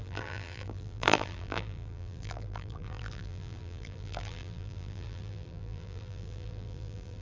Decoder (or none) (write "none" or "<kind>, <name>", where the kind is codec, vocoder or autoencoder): vocoder, BigVGAN v2